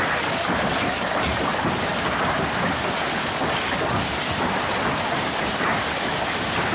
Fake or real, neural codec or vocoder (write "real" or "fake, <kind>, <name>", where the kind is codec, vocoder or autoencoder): real